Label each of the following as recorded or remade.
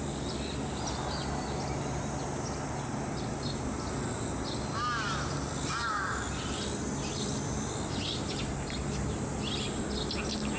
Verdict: recorded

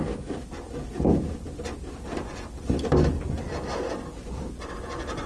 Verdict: recorded